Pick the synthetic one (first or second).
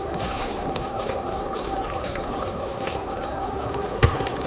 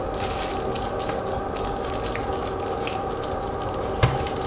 first